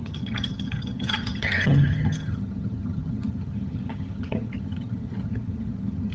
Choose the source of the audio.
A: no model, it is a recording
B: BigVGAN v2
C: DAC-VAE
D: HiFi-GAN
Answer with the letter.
D